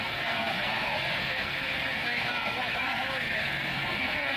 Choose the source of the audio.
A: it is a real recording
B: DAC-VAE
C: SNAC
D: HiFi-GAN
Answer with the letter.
C